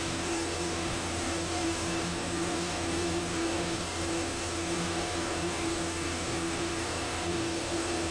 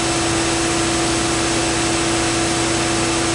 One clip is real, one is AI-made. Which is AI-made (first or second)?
first